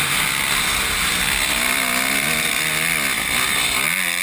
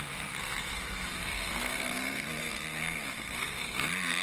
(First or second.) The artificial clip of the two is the second